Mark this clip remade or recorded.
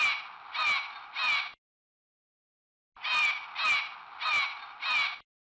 recorded